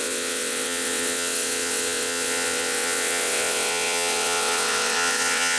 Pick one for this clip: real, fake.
fake